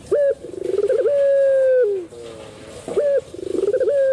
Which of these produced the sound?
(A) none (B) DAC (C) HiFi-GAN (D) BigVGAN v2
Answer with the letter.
A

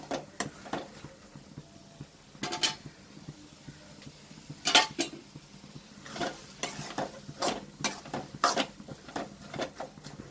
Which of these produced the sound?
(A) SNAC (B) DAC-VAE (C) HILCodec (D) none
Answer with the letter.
D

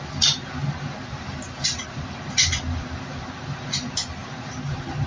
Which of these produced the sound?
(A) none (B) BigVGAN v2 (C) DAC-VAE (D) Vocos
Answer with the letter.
A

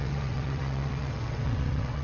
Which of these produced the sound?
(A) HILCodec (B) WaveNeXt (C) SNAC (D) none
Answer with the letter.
B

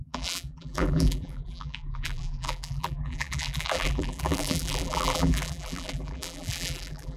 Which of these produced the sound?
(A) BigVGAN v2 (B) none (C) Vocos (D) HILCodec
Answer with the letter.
A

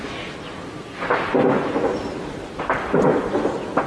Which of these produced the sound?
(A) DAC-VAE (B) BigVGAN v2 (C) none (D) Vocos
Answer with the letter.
C